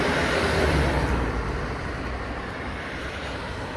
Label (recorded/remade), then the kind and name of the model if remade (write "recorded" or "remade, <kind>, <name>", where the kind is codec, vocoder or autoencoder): remade, vocoder, BigVGAN v2